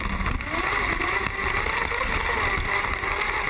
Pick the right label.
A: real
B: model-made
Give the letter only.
A